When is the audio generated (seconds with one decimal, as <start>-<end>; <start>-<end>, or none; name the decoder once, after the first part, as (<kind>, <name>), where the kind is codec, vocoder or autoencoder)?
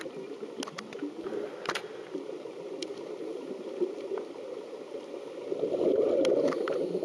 none